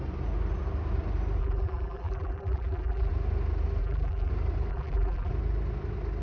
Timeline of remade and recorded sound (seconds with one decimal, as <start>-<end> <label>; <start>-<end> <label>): 0.0-1.4 recorded; 1.4-3.1 remade; 3.1-3.8 recorded; 3.8-4.3 remade; 4.3-4.7 recorded; 4.7-5.3 remade; 5.3-6.2 recorded